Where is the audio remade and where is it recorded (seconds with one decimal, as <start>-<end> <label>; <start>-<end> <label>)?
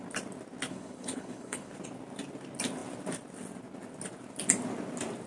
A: 0.0-0.7 recorded; 0.7-1.7 remade; 1.7-5.3 recorded